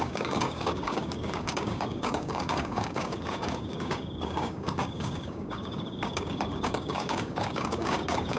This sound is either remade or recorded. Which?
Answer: remade